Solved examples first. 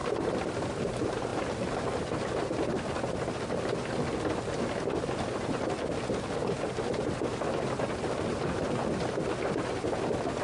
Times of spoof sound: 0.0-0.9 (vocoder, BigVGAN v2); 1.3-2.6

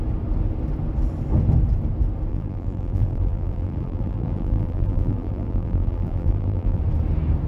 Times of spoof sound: 2.3-6.8 (vocoder, BigVGAN v2)

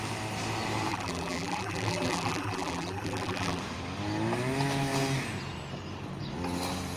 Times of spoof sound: 0.9-3.6 (vocoder, BigVGAN v2)

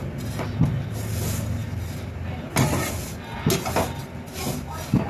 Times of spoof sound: none

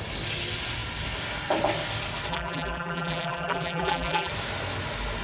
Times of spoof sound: 2.3-4.3 (vocoder, BigVGAN v2)

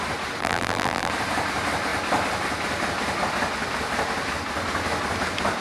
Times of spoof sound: 0.4-1.1 (vocoder, BigVGAN v2)

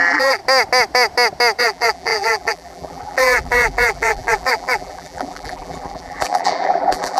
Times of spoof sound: 0.0-0.4 (vocoder, BigVGAN v2); 1.6-7.2